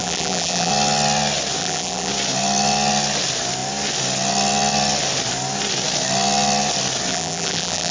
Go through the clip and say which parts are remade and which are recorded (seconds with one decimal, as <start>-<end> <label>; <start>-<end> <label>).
0.0-0.7 remade; 0.7-1.6 recorded; 1.6-2.1 remade; 2.1-7.1 recorded; 7.1-7.9 remade